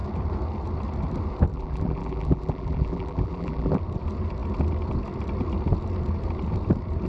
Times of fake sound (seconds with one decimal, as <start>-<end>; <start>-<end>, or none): 1.5-3.8